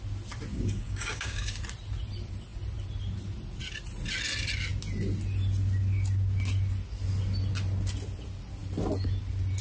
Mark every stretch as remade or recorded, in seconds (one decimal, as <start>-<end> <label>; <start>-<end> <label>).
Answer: 0.0-0.5 recorded; 0.5-1.6 remade; 1.6-9.6 recorded